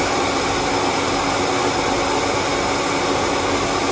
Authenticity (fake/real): real